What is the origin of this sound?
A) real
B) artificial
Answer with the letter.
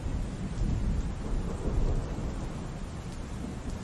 A